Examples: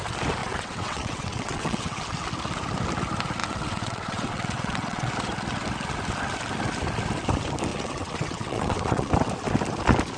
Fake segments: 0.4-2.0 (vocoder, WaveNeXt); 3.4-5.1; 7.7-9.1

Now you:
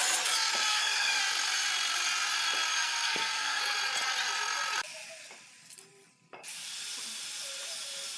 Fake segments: 0.7-1.2 (codec, SNAC); 2.7-3.6

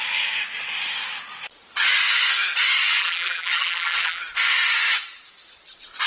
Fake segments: 3.0-4.2 (vocoder, BigVGAN v2)

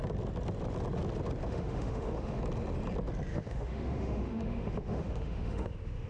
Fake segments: 1.5-2.4 (autoencoder, DAC-VAE); 3.3-6.1

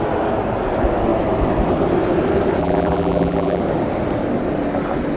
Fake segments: 2.6-3.6 (vocoder, BigVGAN v2)

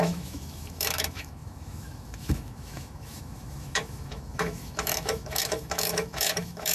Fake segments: 0.0-6.7 (autoencoder, DAC-VAE)

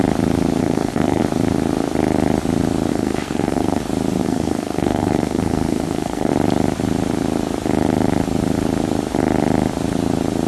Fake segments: 0.6-1.2 (codec, SNAC); 2.9-3.8; 4.2-6.3